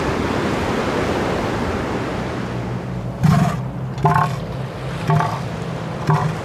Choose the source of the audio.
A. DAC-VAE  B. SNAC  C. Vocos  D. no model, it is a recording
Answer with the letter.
D